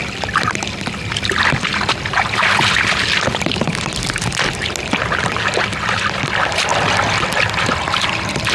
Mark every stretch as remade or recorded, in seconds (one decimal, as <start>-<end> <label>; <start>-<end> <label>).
0.0-8.5 recorded